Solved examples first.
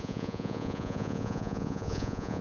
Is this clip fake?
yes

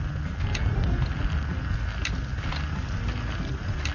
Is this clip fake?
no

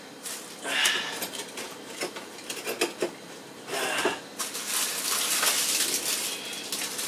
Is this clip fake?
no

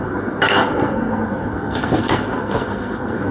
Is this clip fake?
yes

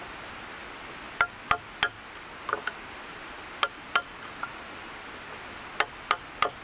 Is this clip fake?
no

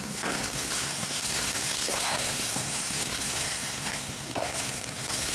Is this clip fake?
yes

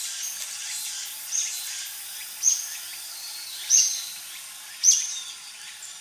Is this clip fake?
no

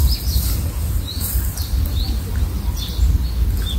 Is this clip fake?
no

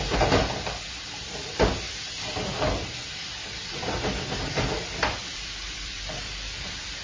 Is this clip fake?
yes